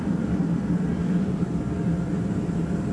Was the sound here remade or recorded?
remade